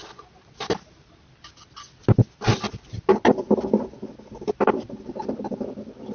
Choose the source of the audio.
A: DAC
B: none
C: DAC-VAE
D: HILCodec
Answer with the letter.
B